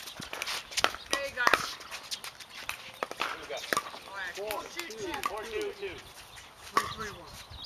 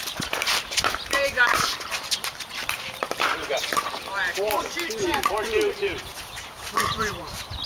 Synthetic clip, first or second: second